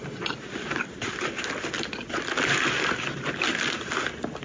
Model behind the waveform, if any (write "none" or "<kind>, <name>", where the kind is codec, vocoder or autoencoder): none